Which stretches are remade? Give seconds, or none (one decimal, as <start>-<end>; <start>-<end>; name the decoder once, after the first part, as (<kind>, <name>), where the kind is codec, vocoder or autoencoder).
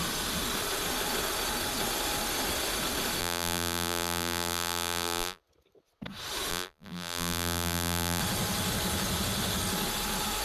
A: 3.2-5.4 (vocoder, BigVGAN v2); 6.5-8.2